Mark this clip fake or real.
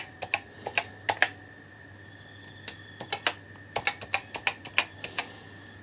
real